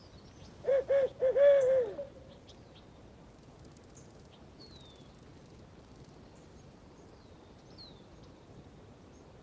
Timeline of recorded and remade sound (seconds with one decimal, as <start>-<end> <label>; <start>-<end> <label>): 0.0-9.4 recorded